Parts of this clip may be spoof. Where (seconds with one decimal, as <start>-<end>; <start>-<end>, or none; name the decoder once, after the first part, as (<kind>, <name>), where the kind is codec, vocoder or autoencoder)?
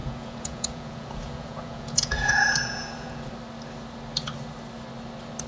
0.0-3.3 (vocoder, Vocos)